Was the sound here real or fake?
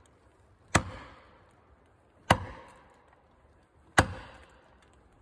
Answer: real